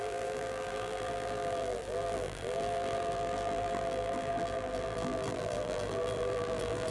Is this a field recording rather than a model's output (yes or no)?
no